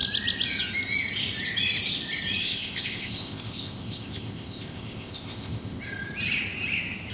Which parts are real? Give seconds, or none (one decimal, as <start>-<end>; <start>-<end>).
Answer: 0.0-2.4; 5.8-7.1